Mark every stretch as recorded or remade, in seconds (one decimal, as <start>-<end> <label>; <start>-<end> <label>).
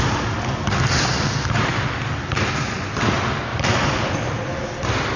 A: 0.0-5.2 recorded